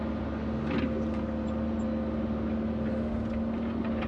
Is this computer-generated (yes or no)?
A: no